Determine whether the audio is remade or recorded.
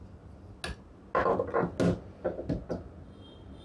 recorded